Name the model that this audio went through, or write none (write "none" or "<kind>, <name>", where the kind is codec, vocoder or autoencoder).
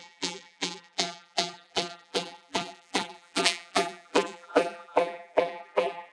vocoder, BigVGAN v2